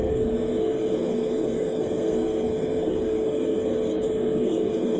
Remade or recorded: remade